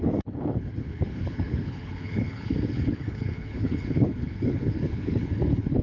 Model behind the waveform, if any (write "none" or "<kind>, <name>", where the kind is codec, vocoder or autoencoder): codec, HILCodec